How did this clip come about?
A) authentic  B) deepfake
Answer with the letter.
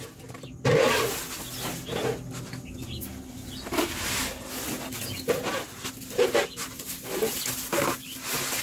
A